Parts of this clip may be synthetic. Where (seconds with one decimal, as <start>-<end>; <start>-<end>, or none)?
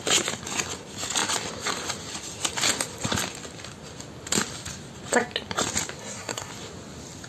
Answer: 6.0-6.5